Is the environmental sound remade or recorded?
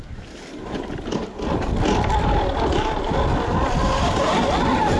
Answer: recorded